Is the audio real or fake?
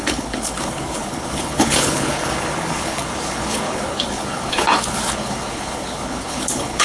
fake